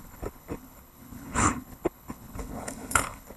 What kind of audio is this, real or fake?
fake